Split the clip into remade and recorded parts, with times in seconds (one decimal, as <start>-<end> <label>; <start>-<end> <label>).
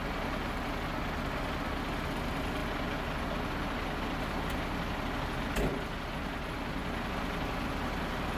0.0-8.4 recorded